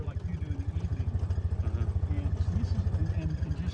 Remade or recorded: recorded